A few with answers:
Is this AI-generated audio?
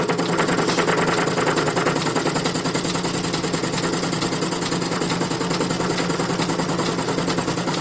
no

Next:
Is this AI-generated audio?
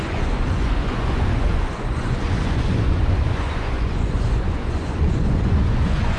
yes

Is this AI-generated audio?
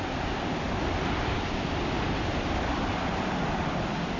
no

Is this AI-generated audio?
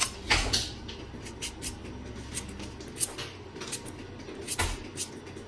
no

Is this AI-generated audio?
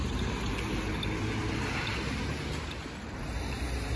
no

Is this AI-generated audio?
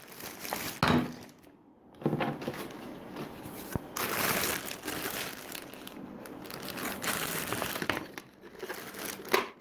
no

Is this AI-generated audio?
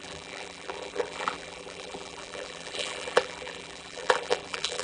yes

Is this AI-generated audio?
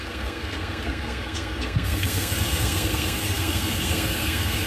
yes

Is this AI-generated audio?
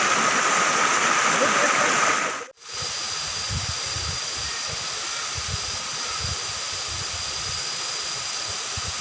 no